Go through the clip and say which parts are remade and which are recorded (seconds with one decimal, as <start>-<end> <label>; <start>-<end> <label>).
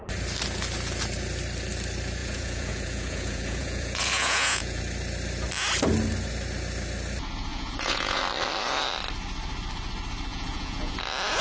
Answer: 0.0-2.2 recorded; 2.2-4.8 remade; 4.8-7.5 recorded; 7.5-8.2 remade; 8.2-10.3 recorded; 10.3-11.0 remade; 11.0-11.4 recorded